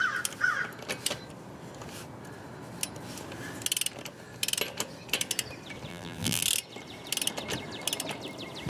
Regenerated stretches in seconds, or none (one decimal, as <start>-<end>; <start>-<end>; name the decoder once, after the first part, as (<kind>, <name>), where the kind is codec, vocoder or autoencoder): 5.9-6.4 (vocoder, BigVGAN v2)